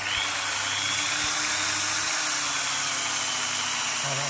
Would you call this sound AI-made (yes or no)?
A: no